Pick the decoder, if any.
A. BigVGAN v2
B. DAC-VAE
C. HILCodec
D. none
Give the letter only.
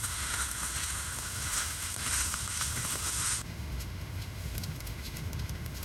B